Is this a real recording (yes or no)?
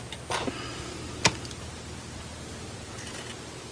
yes